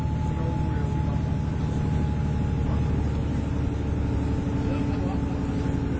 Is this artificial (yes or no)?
no